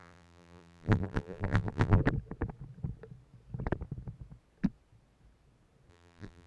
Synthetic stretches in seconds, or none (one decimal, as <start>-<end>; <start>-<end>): 0.0-2.0; 5.9-6.5